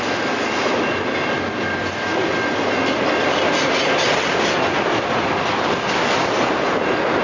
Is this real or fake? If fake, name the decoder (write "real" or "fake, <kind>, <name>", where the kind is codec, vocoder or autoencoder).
real